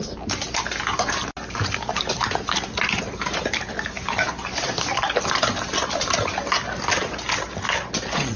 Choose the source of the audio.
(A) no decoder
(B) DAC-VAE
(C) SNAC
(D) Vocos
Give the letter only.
A